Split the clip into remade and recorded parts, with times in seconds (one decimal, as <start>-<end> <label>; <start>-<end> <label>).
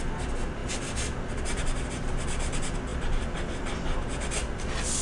0.0-5.0 recorded